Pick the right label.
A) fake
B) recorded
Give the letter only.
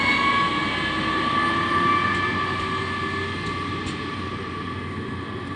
B